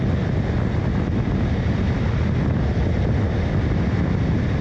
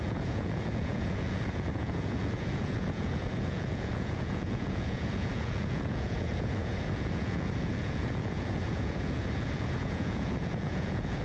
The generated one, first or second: second